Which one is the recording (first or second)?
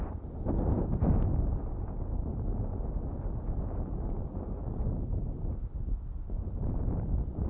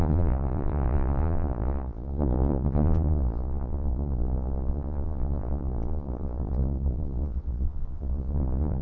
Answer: first